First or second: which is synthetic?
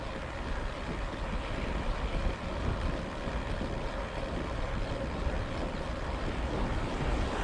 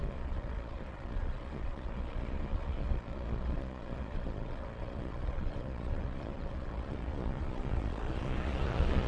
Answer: second